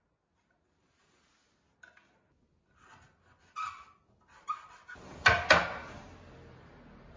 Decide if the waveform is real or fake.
real